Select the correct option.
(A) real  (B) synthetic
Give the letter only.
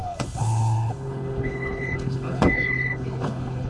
B